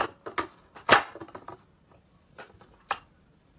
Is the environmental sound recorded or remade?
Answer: recorded